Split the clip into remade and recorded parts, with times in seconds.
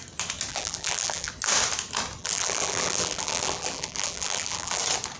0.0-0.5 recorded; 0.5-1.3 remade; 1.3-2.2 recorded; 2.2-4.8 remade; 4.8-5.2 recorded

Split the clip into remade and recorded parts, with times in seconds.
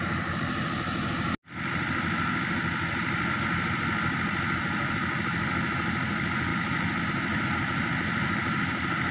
0.0-9.1 recorded